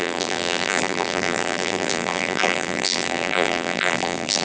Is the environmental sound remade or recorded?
remade